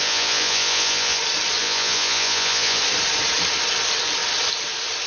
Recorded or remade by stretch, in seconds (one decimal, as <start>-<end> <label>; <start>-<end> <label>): 0.0-1.2 remade; 1.2-1.6 recorded; 1.6-2.8 remade; 2.8-5.1 recorded